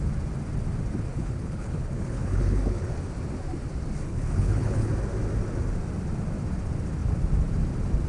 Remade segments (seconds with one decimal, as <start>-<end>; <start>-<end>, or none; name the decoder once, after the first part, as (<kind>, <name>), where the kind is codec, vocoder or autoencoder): 1.1-2.8 (codec, HILCodec); 4.1-4.9